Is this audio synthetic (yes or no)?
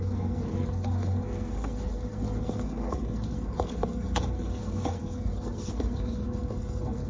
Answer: yes